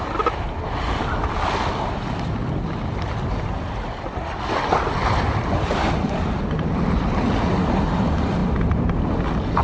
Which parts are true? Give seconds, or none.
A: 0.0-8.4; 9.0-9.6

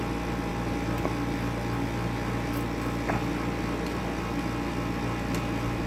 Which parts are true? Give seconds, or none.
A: 0.0-5.9

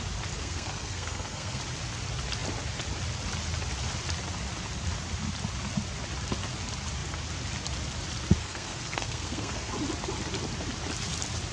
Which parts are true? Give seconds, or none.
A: 0.0-0.4; 1.6-8.4; 9.7-11.5

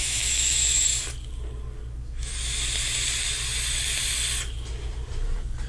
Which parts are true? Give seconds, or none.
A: 0.9-1.9; 2.3-5.7

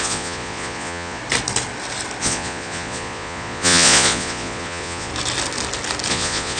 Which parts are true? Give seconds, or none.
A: 1.2-2.2; 5.1-6.1

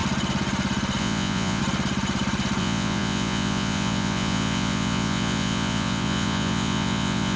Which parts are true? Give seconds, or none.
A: 0.0-1.0; 1.6-2.6

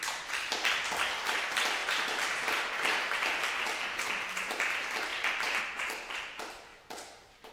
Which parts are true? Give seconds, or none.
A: 0.0-1.8; 3.6-5.1; 5.6-6.7